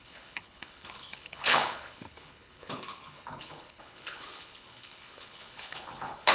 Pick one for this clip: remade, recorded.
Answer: remade